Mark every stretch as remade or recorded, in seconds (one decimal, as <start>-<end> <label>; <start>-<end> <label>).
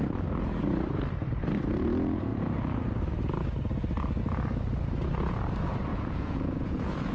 0.0-5.9 recorded; 5.9-7.1 remade